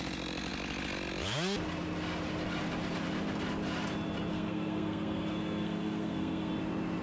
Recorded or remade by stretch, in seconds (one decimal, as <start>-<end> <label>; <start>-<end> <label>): 0.0-4.3 recorded; 4.3-6.5 remade; 6.5-7.0 recorded